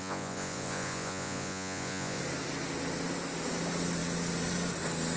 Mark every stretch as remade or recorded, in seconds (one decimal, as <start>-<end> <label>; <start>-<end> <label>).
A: 0.0-2.2 remade; 2.2-5.2 recorded